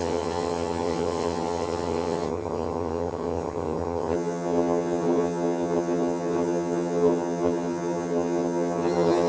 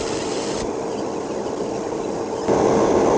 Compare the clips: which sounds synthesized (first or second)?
first